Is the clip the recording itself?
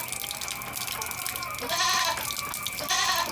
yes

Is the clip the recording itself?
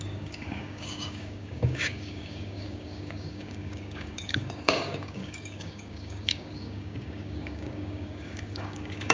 no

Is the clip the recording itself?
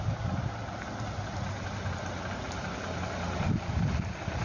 yes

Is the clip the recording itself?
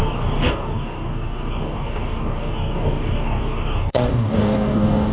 no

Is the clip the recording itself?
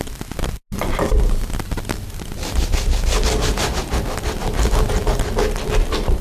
yes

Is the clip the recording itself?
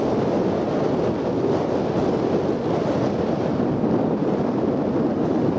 yes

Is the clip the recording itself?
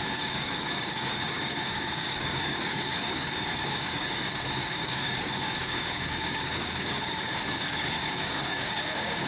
no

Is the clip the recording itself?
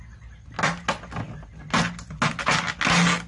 yes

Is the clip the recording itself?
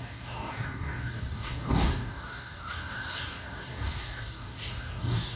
no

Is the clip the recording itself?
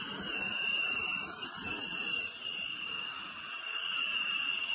yes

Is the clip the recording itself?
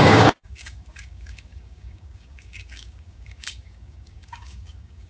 no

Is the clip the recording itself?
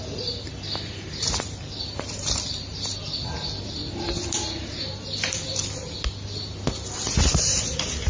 yes